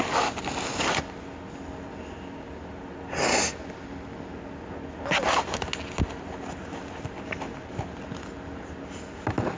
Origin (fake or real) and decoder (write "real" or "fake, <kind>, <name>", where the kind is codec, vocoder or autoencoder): real